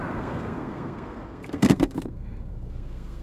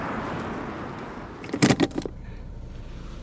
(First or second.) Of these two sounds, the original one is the second